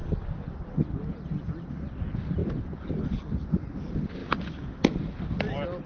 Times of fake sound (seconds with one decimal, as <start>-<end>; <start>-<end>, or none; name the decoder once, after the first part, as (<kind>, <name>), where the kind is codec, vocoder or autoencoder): 0.0-1.7 (vocoder, BigVGAN v2)